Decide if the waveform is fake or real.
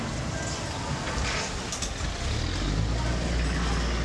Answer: real